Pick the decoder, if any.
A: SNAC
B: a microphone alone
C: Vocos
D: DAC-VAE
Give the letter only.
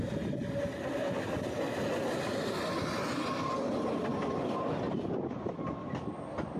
B